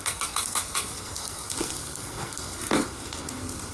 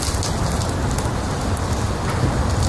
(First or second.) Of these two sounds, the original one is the second